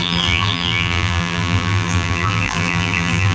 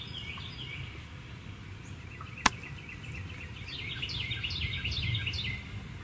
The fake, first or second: first